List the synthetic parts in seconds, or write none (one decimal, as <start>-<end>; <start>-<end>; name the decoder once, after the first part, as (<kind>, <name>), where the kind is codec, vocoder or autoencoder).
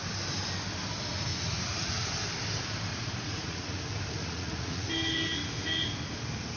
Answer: 1.3-2.1 (vocoder, Vocos); 2.9-3.8; 4.2-4.9